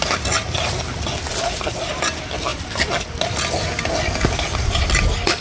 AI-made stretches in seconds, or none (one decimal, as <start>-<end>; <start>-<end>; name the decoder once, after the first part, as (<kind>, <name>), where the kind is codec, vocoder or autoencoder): none